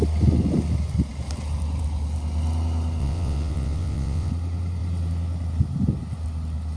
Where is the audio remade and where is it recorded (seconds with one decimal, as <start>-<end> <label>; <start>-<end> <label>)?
0.0-3.0 recorded; 3.0-4.3 remade; 4.3-6.8 recorded